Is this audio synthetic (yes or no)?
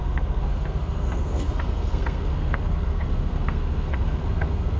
yes